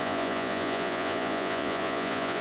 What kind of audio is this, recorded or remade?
remade